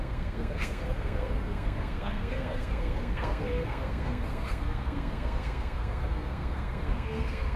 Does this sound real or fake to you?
fake